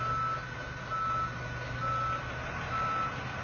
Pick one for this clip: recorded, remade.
recorded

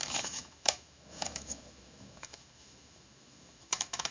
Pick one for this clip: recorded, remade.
remade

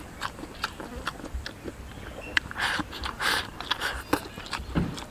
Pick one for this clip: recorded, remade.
recorded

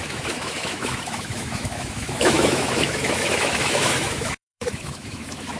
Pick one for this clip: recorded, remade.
remade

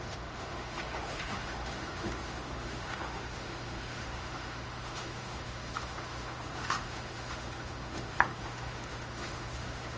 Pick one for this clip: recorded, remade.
remade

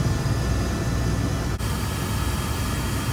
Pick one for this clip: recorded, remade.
recorded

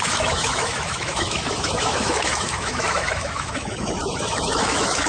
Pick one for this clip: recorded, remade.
remade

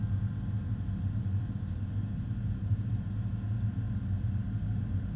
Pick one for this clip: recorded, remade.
recorded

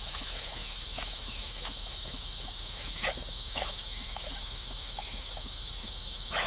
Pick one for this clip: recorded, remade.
remade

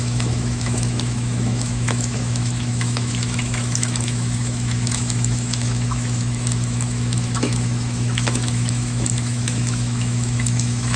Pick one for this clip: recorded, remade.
remade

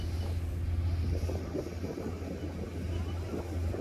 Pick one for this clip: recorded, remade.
recorded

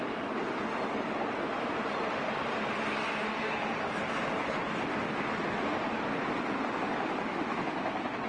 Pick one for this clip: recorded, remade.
recorded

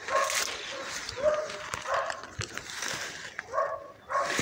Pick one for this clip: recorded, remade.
recorded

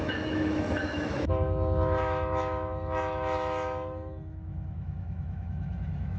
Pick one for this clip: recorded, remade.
remade